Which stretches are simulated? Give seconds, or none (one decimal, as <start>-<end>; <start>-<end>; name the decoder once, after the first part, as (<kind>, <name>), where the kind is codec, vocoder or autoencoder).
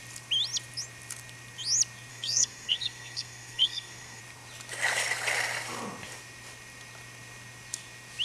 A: 2.1-4.2 (codec, SNAC)